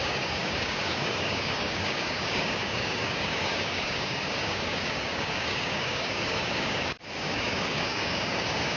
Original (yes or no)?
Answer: no